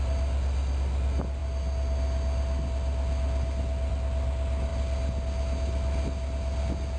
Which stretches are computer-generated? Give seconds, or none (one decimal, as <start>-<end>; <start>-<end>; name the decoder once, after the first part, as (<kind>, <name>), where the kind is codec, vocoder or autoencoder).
none